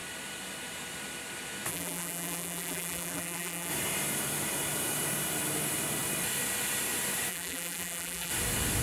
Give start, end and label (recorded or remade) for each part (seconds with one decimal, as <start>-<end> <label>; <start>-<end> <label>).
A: 0.0-1.7 recorded; 1.7-3.7 remade; 3.7-7.3 recorded; 7.3-8.3 remade; 8.3-8.8 recorded